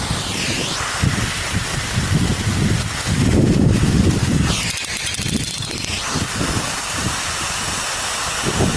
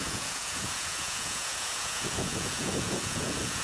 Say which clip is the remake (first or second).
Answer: second